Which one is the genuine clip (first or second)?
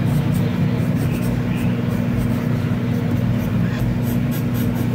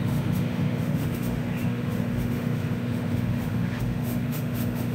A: first